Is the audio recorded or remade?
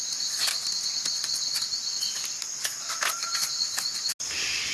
recorded